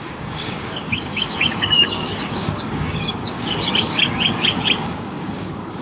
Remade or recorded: remade